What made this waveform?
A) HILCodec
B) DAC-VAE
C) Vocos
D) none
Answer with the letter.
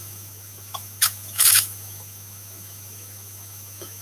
B